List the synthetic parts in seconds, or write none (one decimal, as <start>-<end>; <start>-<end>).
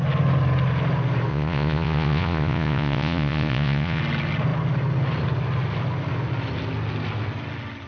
1.3-4.0